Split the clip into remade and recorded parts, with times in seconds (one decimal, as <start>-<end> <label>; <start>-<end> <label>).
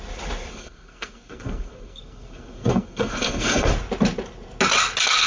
0.0-0.5 recorded; 0.5-3.7 remade; 3.7-5.3 recorded